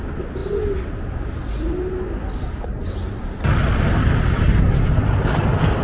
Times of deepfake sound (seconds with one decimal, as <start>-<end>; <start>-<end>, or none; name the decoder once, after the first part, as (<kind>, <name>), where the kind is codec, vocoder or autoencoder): none